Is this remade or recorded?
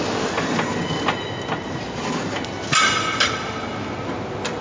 recorded